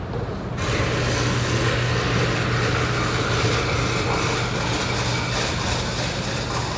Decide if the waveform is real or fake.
real